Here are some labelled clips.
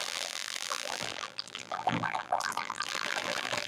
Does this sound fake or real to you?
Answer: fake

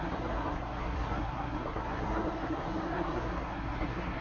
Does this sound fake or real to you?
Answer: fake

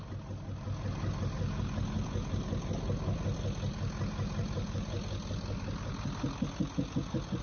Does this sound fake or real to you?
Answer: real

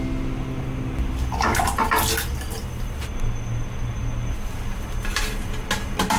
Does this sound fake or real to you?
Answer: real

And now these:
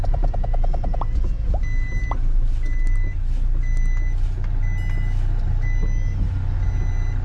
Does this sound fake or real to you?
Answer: real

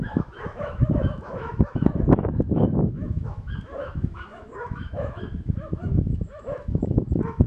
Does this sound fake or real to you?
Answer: fake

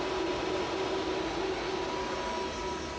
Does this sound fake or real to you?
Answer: real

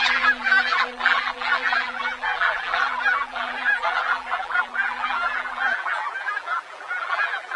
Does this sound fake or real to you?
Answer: fake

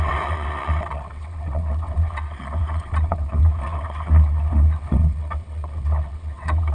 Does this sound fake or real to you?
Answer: fake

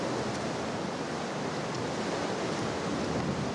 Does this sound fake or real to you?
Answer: real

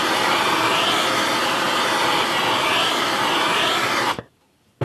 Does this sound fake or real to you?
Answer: real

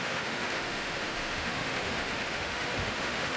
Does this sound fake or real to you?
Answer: fake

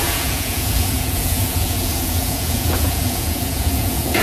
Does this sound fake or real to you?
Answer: fake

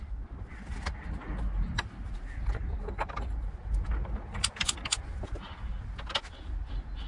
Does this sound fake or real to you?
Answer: real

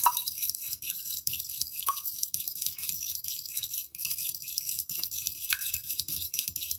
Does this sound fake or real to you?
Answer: fake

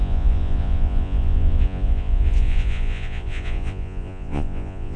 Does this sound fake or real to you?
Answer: fake